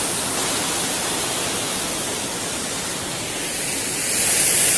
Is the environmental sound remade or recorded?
recorded